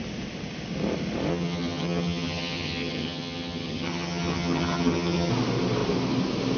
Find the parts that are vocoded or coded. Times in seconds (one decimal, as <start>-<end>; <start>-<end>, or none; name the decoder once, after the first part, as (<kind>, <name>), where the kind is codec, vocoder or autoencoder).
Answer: 1.3-5.3 (vocoder, HiFi-GAN)